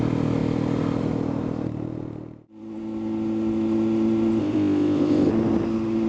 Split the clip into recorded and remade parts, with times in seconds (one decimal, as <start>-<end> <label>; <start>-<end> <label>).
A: 0.0-4.4 recorded; 4.4-5.3 remade; 5.3-6.1 recorded